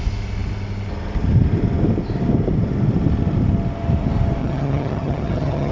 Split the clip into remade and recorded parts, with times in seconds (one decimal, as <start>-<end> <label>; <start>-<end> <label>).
0.0-4.4 recorded; 4.4-5.7 remade